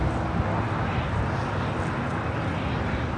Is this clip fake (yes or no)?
no